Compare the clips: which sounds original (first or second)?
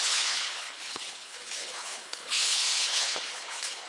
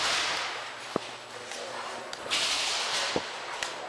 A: second